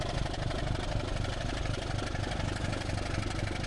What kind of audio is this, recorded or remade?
recorded